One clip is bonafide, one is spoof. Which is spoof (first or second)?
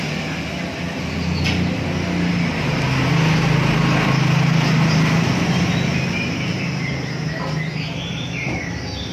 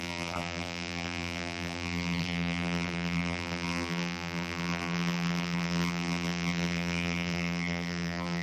second